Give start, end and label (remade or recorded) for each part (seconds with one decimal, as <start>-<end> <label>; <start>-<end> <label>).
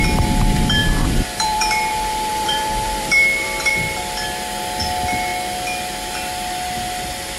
0.0-0.8 recorded; 0.8-1.9 remade; 1.9-2.3 recorded; 2.3-3.7 remade; 3.7-7.4 recorded